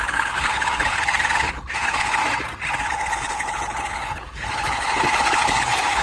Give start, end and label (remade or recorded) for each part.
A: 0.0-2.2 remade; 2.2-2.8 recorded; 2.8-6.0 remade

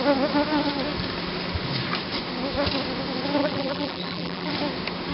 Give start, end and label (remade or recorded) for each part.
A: 0.0-3.4 recorded; 3.4-4.5 remade; 4.5-5.1 recorded

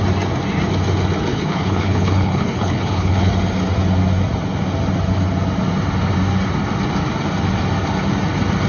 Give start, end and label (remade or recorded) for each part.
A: 0.0-1.3 recorded; 1.3-3.3 remade; 3.3-8.7 recorded

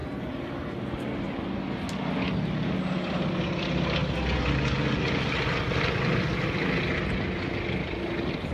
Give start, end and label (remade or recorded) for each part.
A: 0.0-8.5 recorded